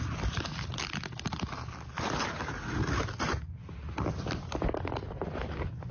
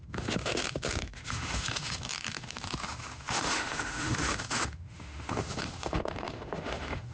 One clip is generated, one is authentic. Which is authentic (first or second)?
first